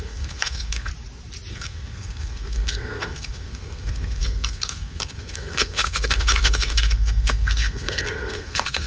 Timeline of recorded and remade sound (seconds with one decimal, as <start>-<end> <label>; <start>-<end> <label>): 0.0-0.9 remade; 0.9-1.5 recorded; 1.5-8.9 remade